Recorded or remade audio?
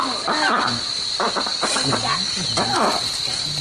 recorded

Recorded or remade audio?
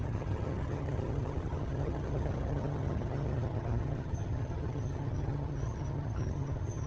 remade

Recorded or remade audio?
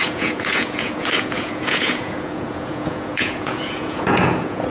remade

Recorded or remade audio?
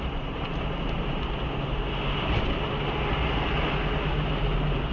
recorded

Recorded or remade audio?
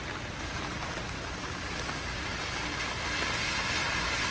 recorded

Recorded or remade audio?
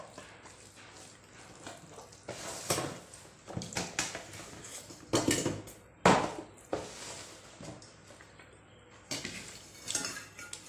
recorded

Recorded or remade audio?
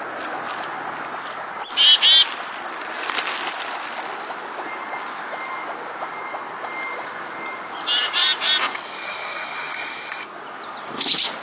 recorded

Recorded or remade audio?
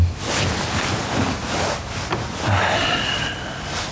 recorded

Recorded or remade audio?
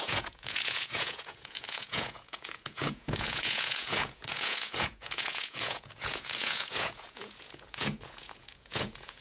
remade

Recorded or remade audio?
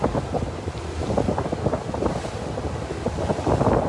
recorded